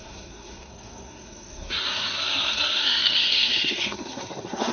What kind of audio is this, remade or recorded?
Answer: remade